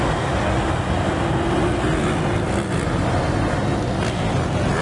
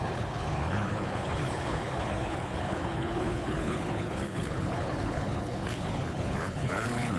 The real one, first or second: first